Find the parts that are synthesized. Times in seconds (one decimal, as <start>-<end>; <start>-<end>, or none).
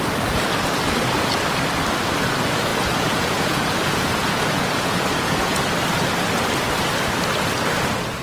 2.7-5.6